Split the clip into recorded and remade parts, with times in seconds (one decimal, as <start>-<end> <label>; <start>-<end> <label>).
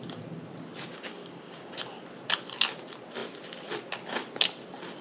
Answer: 0.0-0.9 recorded; 0.9-1.8 remade; 1.8-5.0 recorded